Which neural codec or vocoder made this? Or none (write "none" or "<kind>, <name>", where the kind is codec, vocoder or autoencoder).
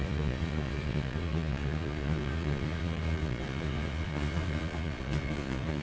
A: vocoder, Vocos